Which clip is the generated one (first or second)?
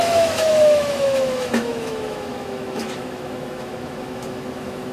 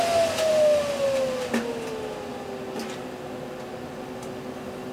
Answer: first